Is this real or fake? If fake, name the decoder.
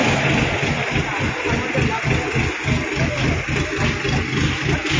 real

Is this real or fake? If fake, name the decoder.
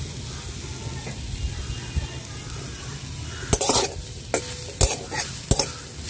real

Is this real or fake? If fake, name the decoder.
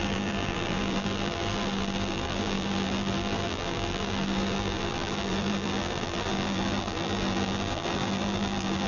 fake, vocoder, BigVGAN v2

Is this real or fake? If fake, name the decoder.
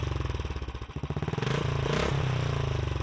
real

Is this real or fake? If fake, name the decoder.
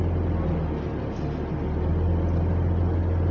real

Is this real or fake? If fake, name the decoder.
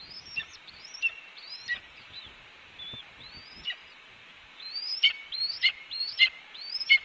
fake, vocoder, BigVGAN v2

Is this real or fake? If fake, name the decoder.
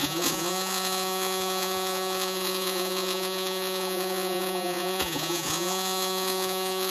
fake, vocoder, Vocos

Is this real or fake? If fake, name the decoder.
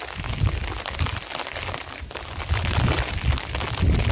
real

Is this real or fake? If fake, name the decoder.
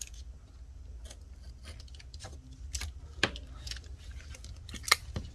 real